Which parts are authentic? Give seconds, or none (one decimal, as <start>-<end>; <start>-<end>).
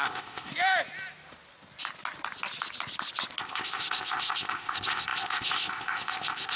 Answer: 0.5-3.4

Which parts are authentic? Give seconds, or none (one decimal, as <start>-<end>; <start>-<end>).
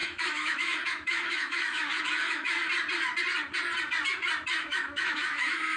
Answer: 2.5-4.6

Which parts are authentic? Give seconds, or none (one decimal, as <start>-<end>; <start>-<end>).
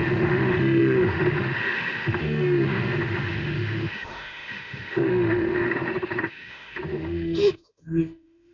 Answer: none